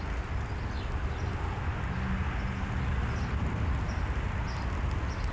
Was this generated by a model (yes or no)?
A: no